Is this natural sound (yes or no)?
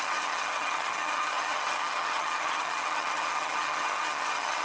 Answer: no